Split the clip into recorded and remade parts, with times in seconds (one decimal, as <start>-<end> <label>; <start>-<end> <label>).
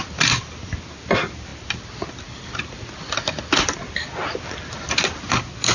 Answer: 0.0-5.7 recorded